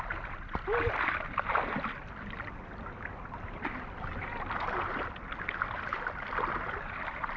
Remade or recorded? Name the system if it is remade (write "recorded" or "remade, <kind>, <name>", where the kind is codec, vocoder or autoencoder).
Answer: recorded